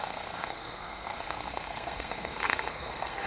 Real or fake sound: fake